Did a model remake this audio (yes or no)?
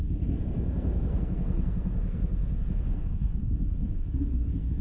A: yes